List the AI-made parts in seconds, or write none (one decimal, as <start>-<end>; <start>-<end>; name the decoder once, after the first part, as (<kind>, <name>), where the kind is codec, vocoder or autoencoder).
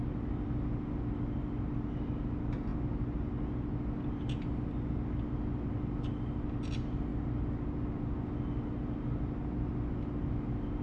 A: none